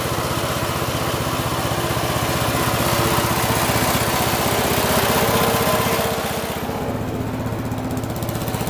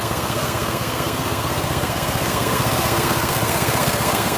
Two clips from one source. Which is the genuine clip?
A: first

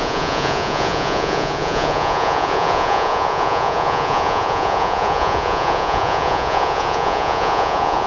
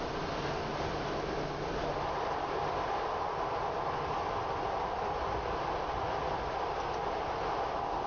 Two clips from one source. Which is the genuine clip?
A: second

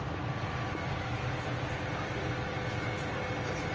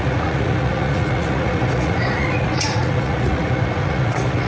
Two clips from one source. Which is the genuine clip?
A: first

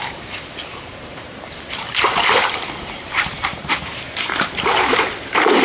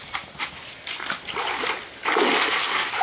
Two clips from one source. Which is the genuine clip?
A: second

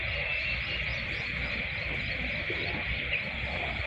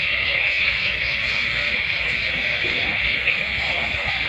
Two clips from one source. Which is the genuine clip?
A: first